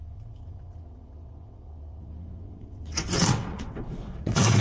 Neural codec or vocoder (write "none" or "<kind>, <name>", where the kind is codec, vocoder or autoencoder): vocoder, WaveNeXt